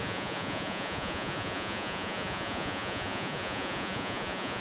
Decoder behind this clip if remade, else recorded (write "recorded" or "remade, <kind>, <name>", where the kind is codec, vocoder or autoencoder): remade, vocoder, Vocos